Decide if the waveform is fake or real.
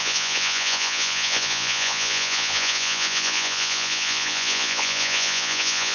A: fake